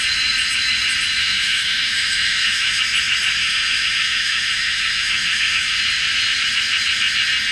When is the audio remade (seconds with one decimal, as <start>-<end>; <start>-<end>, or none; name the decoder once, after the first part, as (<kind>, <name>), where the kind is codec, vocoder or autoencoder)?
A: 1.2-2.8 (autoencoder, DAC-VAE); 3.4-5.8